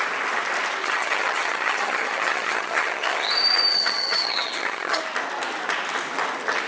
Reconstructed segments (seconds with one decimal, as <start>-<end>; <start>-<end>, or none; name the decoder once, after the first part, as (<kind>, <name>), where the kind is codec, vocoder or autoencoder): 0.8-3.3 (vocoder, HiFi-GAN); 3.7-5.0